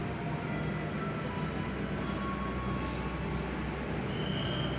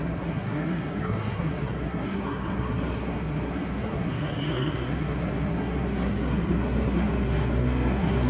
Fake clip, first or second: second